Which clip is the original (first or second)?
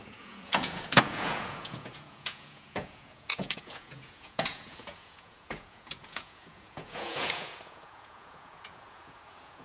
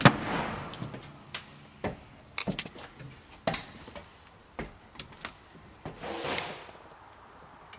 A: second